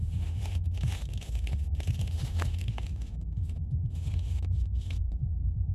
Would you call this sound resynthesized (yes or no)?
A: yes